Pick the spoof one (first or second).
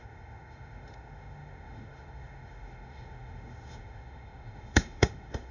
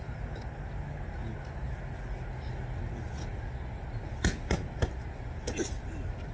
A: first